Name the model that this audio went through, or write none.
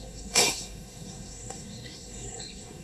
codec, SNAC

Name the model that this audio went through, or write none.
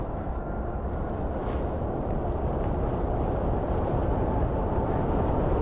none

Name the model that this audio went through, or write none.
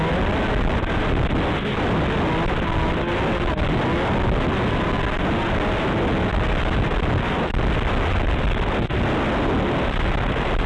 none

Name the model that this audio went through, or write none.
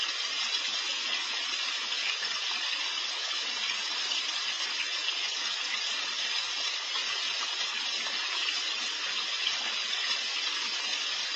none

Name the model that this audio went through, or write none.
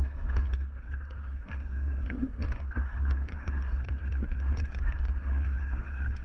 codec, SNAC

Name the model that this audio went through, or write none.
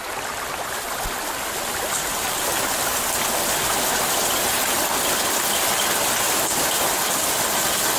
none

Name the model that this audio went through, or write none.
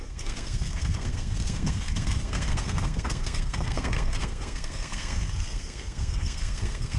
codec, SNAC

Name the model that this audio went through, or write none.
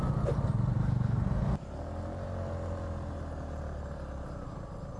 none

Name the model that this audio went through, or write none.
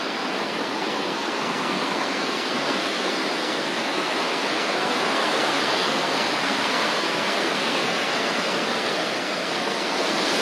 codec, SNAC